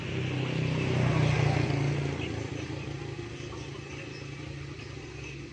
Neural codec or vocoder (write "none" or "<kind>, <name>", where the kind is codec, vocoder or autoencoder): none